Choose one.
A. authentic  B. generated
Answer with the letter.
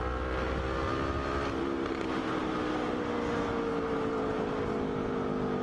A